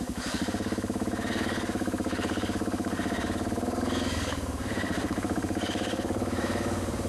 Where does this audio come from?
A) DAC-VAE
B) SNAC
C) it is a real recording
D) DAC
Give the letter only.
D